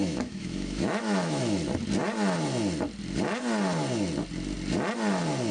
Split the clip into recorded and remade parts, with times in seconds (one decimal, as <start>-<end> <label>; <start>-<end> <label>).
0.0-1.4 remade; 1.4-5.5 recorded